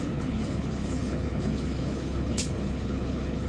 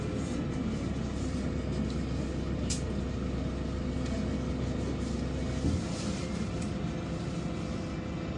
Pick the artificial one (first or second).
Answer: first